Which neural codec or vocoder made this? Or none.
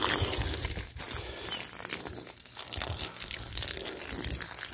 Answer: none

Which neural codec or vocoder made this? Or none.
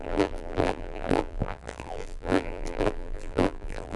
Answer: vocoder, BigVGAN v2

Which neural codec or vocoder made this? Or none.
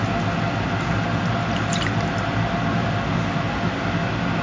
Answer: none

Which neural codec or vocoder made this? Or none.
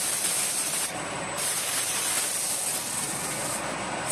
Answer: none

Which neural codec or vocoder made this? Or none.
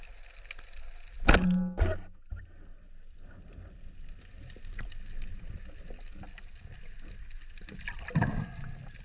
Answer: none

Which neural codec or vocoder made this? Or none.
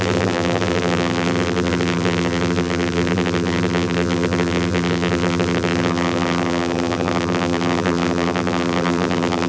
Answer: vocoder, BigVGAN v2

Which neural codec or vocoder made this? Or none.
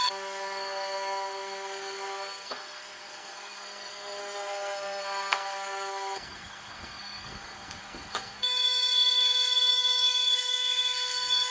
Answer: codec, SNAC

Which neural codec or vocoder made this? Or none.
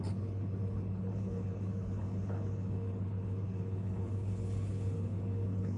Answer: codec, HILCodec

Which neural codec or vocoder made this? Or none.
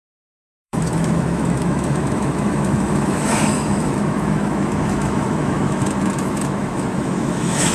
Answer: autoencoder, DAC-VAE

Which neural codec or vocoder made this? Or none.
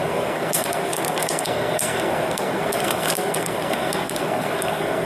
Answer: codec, SNAC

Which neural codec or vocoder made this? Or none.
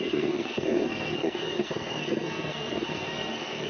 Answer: codec, SNAC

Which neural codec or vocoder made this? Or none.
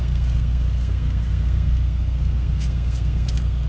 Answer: codec, SNAC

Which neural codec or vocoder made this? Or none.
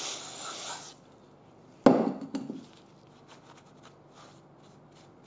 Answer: none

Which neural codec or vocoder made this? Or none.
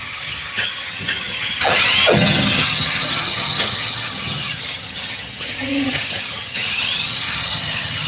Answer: vocoder, HiFi-GAN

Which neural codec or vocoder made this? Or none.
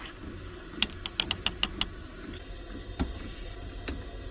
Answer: none